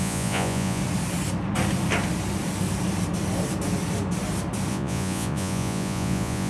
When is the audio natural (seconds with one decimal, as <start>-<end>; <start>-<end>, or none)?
0.8-4.7